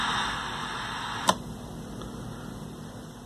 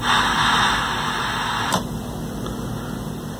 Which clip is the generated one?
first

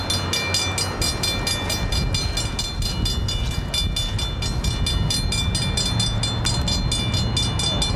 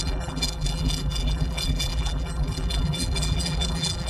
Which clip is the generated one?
second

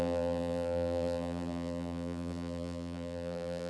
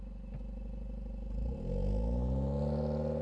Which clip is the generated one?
first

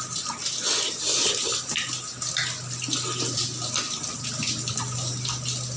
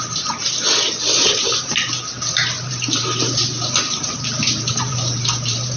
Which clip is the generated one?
second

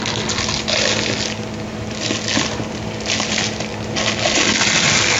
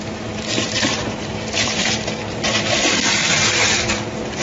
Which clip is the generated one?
second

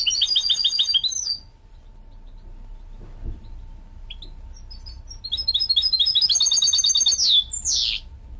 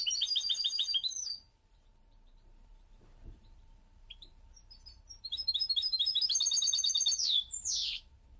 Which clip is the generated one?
second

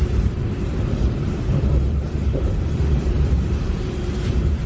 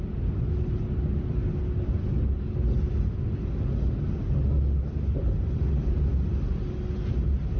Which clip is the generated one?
first